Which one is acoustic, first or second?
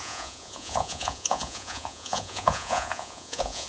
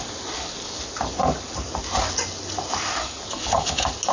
second